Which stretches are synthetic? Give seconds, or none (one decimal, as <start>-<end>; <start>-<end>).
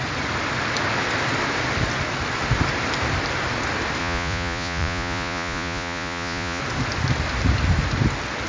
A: 4.0-6.6